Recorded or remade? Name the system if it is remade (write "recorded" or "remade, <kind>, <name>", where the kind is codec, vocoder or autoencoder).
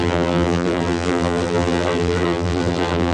remade, vocoder, BigVGAN v2